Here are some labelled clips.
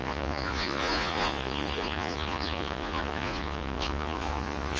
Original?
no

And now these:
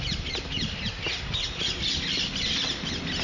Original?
yes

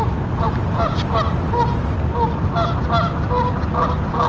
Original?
yes